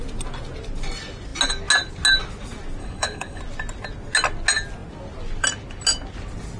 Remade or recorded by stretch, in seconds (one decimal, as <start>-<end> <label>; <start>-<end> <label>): 0.0-2.8 recorded; 2.8-3.4 remade; 3.4-6.6 recorded